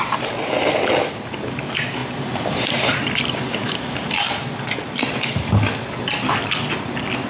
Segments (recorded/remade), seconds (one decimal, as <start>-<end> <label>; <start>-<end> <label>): 0.0-7.3 recorded